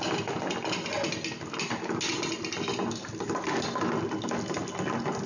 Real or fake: real